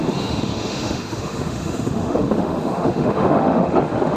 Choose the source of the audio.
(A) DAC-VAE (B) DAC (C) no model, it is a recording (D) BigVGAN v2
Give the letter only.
A